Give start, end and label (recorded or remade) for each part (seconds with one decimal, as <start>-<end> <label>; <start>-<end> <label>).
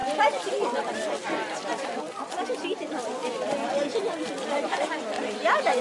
0.0-5.8 recorded